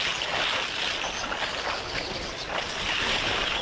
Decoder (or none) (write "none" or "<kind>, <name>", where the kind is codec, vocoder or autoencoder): none